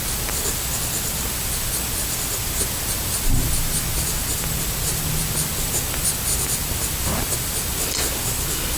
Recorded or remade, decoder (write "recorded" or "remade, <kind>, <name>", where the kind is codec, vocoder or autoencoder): recorded